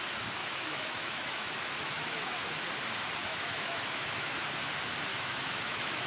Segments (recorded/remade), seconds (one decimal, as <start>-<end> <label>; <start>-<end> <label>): 0.0-0.4 recorded; 0.4-2.4 remade; 2.4-3.2 recorded; 3.2-4.3 remade; 4.3-5.1 recorded; 5.1-6.1 remade